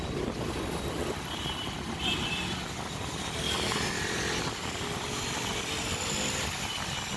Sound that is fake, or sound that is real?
real